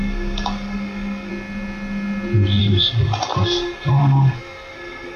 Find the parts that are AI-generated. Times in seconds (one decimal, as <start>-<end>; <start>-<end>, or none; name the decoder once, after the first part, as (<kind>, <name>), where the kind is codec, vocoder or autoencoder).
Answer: 0.0-1.3 (codec, SNAC); 2.6-5.2